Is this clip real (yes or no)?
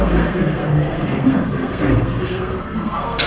no